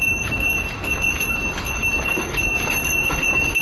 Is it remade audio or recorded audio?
remade